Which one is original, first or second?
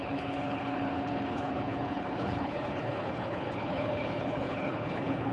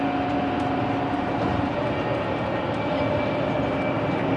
second